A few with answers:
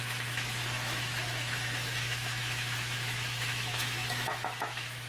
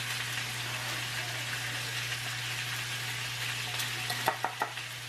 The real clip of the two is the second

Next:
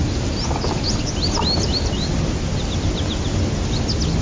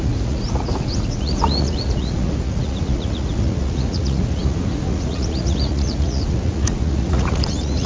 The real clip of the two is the first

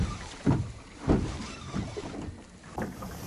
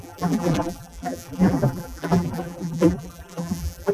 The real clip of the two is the first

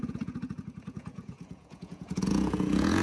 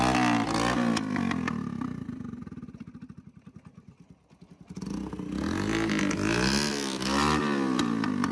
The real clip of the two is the second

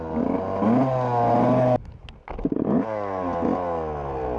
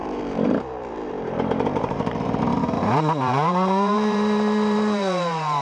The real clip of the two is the first